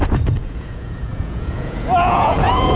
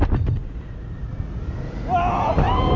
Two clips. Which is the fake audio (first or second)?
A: first